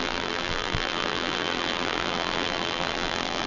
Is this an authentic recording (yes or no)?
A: no